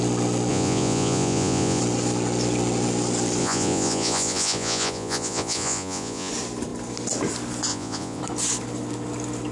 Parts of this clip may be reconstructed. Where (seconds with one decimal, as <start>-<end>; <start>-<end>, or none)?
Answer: 0.5-1.8; 3.4-6.3; 7.7-8.2